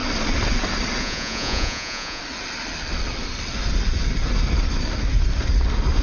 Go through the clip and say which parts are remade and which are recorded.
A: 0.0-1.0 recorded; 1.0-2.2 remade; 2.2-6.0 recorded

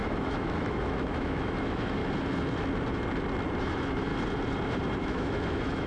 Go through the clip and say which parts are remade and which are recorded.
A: 0.0-2.0 remade; 2.0-3.6 recorded; 3.6-4.1 remade; 4.1-5.0 recorded; 5.0-5.9 remade

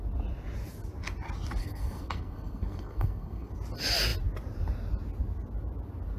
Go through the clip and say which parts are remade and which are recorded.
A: 0.0-1.6 recorded; 1.6-3.5 remade; 3.5-6.2 recorded

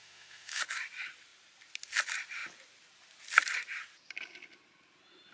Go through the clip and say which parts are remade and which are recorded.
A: 0.0-0.6 remade; 0.6-5.3 recorded

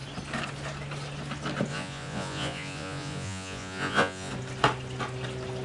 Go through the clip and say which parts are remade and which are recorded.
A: 0.0-1.7 recorded; 1.7-4.3 remade; 4.3-5.6 recorded